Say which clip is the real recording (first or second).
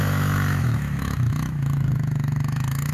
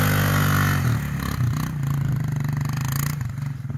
second